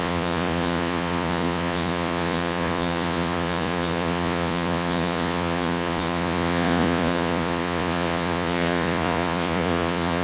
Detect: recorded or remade remade